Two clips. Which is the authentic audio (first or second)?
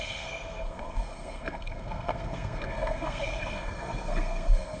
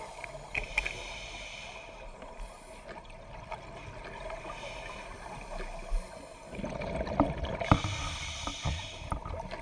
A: second